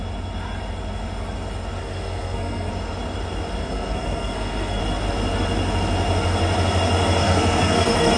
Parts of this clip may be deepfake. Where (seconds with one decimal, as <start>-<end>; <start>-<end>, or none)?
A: 1.8-2.7; 3.6-4.8; 7.2-8.2